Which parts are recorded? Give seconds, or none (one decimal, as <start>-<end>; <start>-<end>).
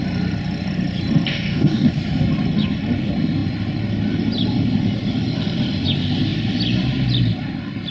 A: 0.0-1.3; 1.9-7.9